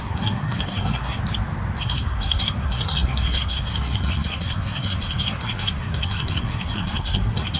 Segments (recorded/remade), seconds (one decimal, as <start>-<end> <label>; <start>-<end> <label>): 0.0-1.2 remade; 1.2-1.8 recorded; 1.8-7.6 remade